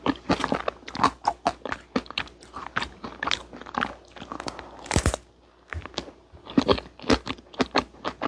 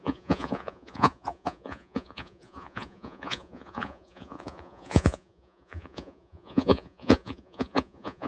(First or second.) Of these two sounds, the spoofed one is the second